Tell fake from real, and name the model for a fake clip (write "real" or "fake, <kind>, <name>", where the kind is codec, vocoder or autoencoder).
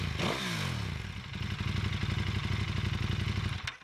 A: real